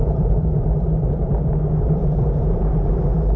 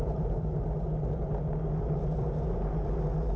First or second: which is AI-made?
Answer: first